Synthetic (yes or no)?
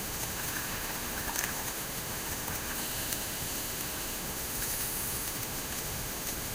yes